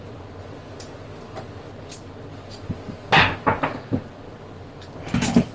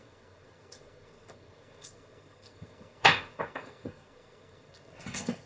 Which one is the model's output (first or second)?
second